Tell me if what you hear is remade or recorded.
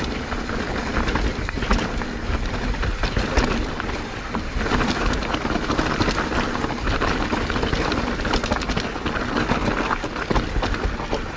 recorded